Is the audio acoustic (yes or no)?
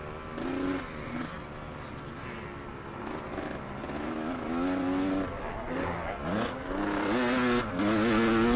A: yes